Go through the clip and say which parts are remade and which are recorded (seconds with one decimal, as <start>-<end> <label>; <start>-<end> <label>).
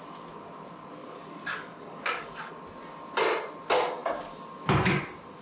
0.0-1.0 recorded; 1.0-2.5 remade; 2.5-5.4 recorded